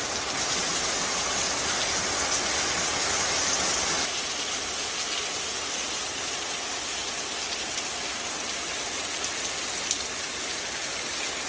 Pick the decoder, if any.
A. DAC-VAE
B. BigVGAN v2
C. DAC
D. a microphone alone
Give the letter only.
D